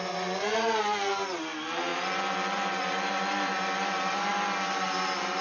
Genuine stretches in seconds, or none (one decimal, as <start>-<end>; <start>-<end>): 0.0-5.4